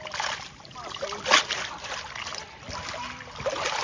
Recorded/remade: recorded